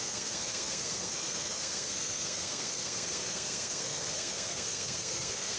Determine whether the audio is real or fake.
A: fake